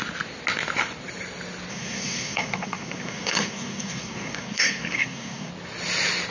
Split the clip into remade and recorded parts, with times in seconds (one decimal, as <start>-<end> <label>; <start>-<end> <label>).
0.0-1.7 recorded; 1.7-5.5 remade; 5.5-6.3 recorded